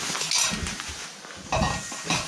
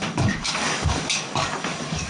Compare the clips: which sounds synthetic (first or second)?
second